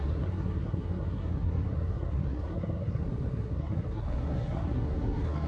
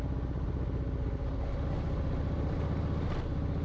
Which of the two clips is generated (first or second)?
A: first